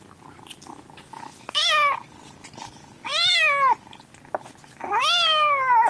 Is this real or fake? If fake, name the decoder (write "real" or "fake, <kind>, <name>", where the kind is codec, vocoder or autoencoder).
real